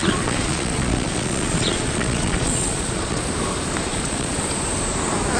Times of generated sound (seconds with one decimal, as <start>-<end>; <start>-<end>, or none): 0.0-3.2; 3.9-4.4